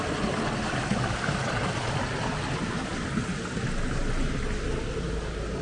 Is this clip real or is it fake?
real